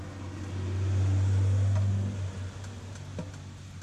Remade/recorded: recorded